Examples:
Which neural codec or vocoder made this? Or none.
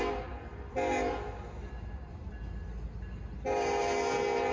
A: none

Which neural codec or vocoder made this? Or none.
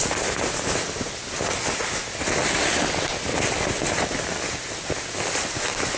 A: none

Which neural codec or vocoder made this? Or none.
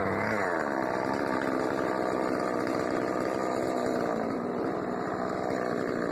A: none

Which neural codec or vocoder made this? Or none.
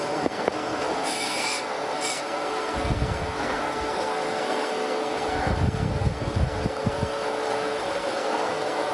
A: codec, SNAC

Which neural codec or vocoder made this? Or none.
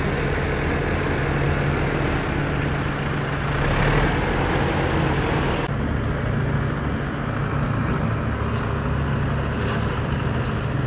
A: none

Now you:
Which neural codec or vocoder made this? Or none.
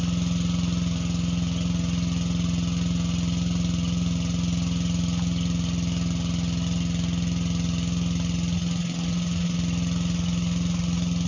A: none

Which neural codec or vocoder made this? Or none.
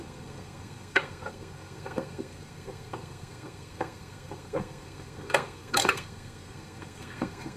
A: codec, SNAC